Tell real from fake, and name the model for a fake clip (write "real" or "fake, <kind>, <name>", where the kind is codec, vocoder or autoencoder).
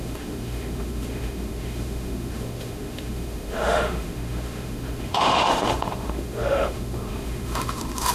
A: fake, autoencoder, DAC-VAE